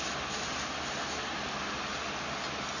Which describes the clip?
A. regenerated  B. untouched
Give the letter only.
B